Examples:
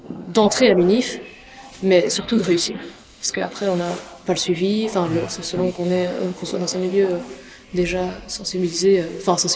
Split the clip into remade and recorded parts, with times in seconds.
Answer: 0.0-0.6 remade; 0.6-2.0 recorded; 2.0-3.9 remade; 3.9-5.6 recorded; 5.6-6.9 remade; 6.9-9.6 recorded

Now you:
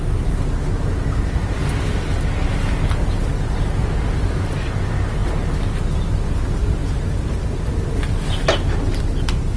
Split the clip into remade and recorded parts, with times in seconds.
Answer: 0.0-9.6 recorded